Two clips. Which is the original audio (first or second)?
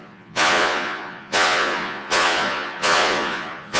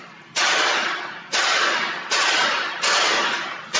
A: second